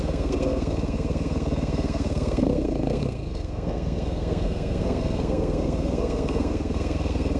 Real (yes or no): no